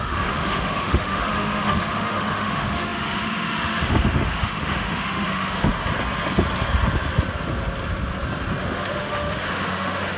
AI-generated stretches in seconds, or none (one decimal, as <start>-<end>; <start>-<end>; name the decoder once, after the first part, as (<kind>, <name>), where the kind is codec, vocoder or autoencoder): 0.0-5.7 (autoencoder, DAC-VAE); 8.6-10.2